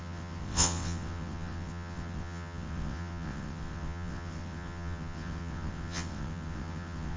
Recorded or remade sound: remade